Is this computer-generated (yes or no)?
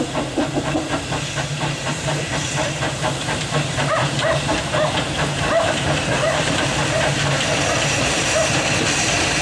yes